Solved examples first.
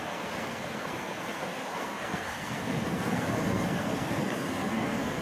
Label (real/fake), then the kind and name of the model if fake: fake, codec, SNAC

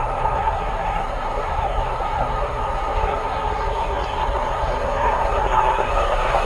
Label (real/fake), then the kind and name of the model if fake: fake, codec, SNAC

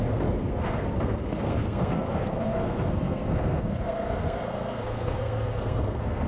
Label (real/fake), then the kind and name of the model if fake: fake, codec, SNAC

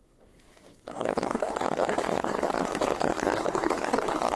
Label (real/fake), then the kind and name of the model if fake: fake, codec, SNAC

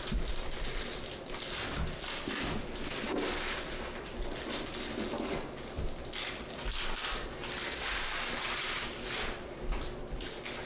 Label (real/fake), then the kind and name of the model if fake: real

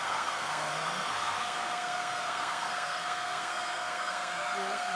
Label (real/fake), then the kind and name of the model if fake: fake, codec, SNAC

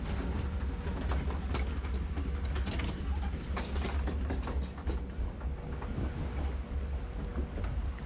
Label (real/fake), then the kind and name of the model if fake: real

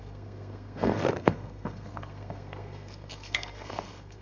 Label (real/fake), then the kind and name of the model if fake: fake, codec, SNAC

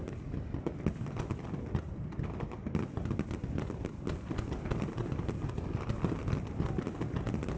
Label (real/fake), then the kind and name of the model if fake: real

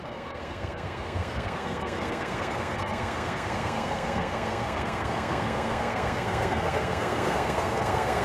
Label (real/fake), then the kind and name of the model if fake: fake, codec, SNAC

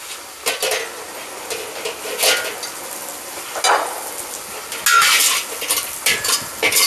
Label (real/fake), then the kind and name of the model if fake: real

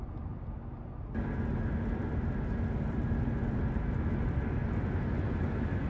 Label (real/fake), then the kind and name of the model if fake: real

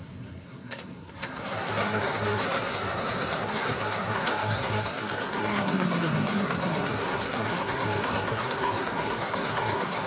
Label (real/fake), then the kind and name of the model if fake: fake, codec, SNAC